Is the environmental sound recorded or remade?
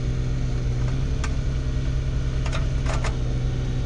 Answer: recorded